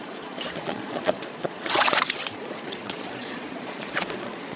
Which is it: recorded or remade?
remade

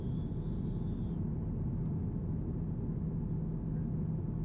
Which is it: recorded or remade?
recorded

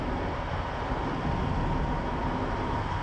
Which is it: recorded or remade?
recorded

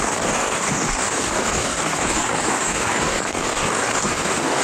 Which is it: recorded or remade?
remade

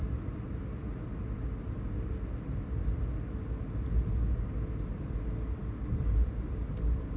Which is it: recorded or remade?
recorded